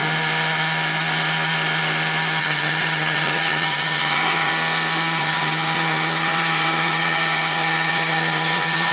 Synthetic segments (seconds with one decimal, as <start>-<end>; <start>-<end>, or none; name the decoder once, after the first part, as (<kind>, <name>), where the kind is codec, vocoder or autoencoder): 2.4-4.5 (vocoder, HiFi-GAN); 5.2-8.9